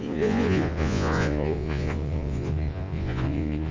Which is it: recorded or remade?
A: remade